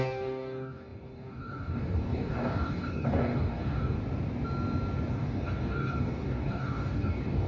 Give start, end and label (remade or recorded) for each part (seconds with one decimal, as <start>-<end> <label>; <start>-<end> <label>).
0.0-4.0 remade; 4.0-5.1 recorded; 5.1-7.5 remade